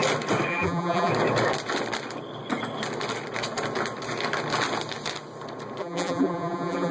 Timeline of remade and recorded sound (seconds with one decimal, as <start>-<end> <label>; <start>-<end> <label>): 0.0-0.5 recorded; 0.5-1.1 remade; 1.1-5.8 recorded; 5.8-6.9 remade